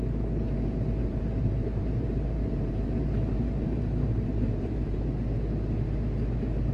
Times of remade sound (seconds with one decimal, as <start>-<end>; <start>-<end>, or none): 1.0-5.0